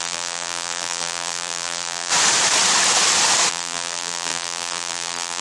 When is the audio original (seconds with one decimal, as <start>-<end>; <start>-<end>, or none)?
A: 2.1-3.5